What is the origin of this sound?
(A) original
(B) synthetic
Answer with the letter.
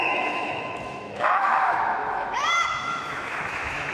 B